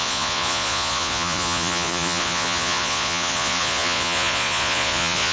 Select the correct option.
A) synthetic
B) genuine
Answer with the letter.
A